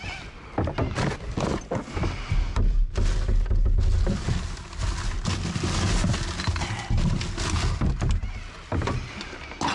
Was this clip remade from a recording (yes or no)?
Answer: no